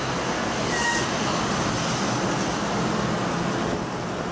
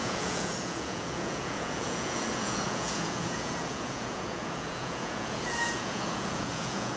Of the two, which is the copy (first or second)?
second